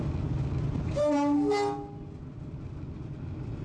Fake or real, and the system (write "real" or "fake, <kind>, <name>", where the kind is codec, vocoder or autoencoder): real